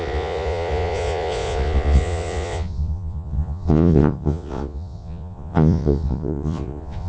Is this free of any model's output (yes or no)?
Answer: no